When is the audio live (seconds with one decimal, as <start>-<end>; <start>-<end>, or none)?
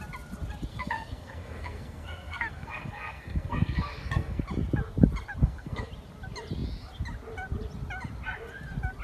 0.0-0.7; 4.4-5.4; 5.9-9.0